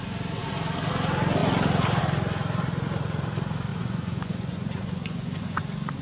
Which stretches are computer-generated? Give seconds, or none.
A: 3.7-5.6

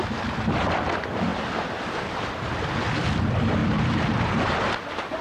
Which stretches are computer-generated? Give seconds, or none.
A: 1.3-2.2; 3.6-4.7

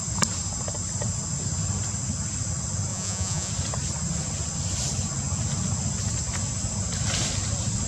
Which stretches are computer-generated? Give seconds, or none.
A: 2.9-3.5

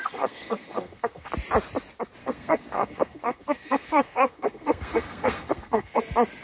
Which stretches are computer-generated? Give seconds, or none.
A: 0.0-1.3; 2.2-6.0

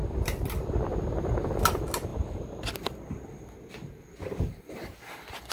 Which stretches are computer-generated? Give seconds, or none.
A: none